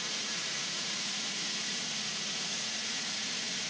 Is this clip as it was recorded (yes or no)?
no